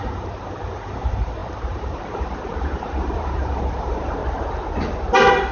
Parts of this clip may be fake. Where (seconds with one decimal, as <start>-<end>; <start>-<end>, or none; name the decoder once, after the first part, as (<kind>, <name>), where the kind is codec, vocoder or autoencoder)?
0.0-4.2 (vocoder, BigVGAN v2)